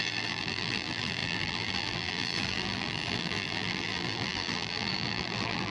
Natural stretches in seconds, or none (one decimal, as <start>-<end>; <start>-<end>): none